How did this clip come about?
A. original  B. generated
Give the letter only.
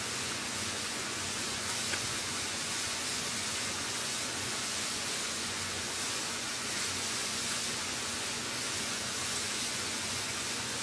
B